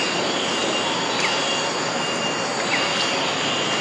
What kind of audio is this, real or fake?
real